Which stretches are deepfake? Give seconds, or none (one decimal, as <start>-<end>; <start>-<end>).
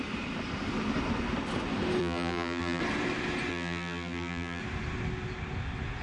2.0-2.8; 3.5-4.6